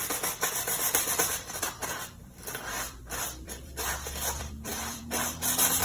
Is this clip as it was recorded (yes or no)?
no